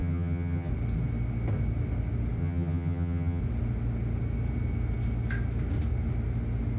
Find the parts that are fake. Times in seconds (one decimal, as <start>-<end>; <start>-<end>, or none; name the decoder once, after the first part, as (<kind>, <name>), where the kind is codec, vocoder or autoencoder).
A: 0.0-0.7 (vocoder, HiFi-GAN); 2.4-3.4